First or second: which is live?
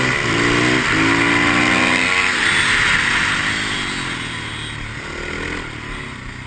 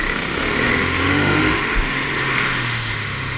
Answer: first